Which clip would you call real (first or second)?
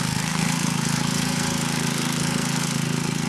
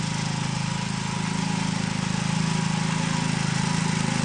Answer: second